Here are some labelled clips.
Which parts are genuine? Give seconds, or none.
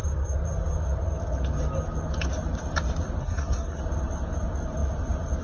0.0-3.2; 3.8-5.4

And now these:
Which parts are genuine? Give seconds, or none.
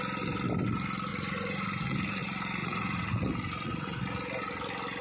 0.0-1.1; 2.2-2.6; 4.0-5.0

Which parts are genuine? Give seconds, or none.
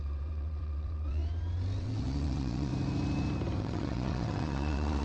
1.2-1.8; 2.7-3.6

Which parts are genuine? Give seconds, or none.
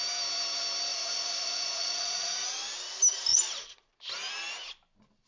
0.0-0.9; 2.5-3.3; 3.9-5.3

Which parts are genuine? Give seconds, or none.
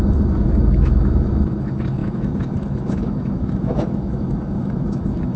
none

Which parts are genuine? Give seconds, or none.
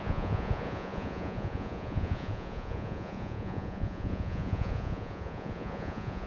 none